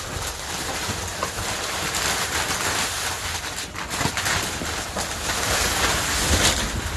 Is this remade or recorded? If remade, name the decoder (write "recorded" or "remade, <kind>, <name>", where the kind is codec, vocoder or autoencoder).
remade, vocoder, BigVGAN v2